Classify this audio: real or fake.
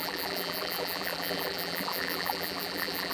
fake